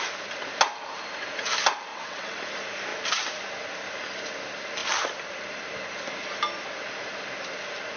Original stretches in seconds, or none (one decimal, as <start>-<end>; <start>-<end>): 0.0-1.9; 2.4-8.0